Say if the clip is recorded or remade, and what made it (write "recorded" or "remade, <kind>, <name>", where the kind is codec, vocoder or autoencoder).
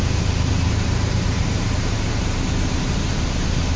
remade, vocoder, BigVGAN v2